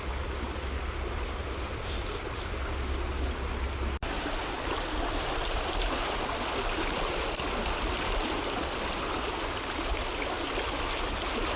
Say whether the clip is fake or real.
real